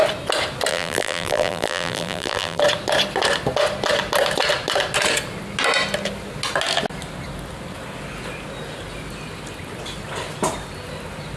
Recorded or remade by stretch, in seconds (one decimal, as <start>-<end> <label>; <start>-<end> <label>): 0.0-0.7 recorded; 0.7-2.6 remade; 2.6-11.4 recorded